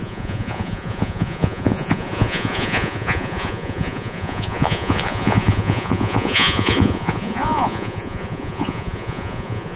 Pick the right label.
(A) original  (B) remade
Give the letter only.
B